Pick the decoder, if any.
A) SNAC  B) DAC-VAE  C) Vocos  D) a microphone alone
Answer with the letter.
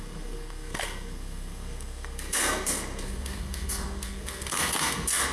A